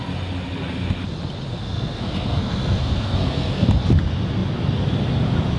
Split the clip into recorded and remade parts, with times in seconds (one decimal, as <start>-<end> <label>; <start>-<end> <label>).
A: 0.0-1.5 recorded; 1.5-3.7 remade; 3.7-5.6 recorded